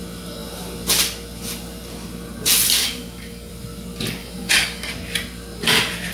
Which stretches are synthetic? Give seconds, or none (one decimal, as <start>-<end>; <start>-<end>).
2.8-3.5; 4.2-4.9